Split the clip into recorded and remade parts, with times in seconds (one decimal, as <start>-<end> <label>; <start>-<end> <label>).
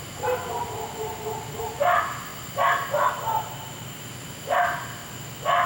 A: 0.0-2.3 remade; 2.3-3.1 recorded; 3.1-5.0 remade; 5.0-5.7 recorded